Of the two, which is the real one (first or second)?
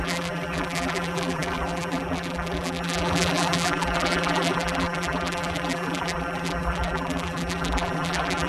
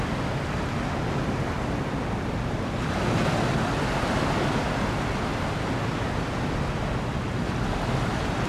second